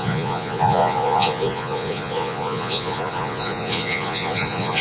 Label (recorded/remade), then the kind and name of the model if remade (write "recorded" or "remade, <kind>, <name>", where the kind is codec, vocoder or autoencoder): remade, vocoder, Vocos